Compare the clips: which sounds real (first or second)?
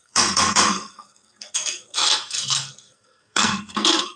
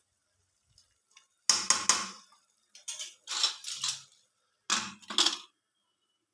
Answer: second